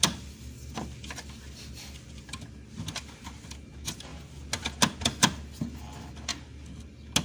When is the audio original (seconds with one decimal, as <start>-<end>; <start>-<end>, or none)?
0.0-7.2